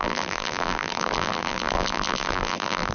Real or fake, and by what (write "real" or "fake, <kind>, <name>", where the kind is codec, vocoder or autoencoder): fake, vocoder, BigVGAN v2